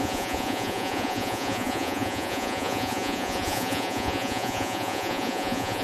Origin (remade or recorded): remade